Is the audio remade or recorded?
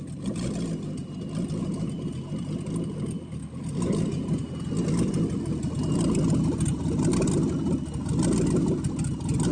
recorded